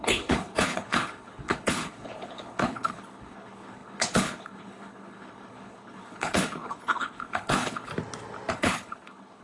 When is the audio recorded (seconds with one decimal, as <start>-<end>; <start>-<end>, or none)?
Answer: 7.9-8.5